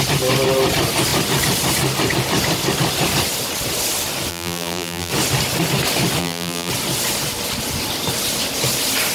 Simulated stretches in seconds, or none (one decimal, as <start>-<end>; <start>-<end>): 4.3-5.1; 6.2-6.7